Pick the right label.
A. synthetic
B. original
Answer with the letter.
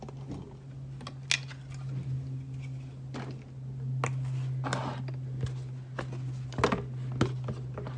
B